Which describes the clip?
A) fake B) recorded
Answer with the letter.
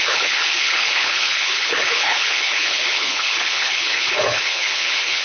A